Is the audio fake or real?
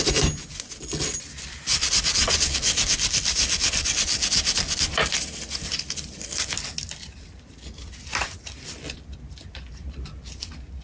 real